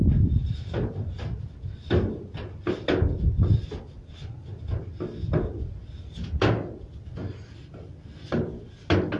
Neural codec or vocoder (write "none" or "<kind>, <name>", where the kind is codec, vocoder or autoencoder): none